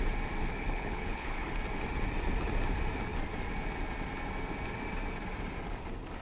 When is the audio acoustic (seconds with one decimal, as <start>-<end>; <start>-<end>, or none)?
0.0-0.4; 1.5-6.2